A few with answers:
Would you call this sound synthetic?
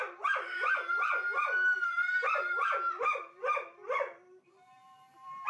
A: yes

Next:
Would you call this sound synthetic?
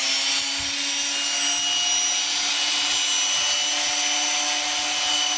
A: no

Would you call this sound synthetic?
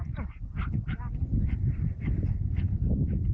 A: yes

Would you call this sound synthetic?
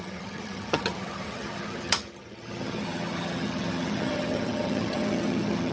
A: yes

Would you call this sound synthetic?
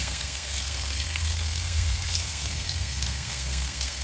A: yes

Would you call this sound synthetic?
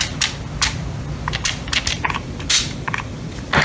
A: no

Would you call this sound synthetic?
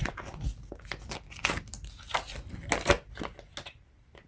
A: no